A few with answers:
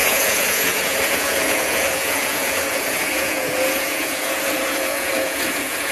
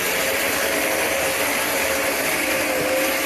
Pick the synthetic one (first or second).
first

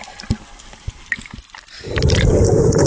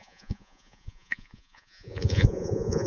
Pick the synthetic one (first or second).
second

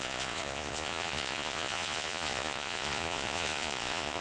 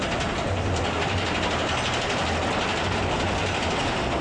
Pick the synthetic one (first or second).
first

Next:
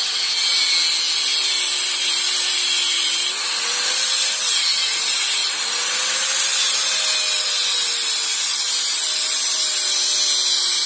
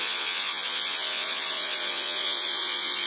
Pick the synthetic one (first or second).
second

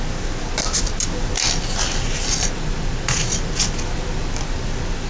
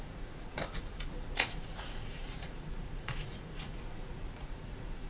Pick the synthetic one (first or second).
second